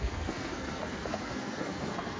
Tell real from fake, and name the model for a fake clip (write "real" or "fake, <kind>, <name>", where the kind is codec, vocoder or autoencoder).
fake, codec, SNAC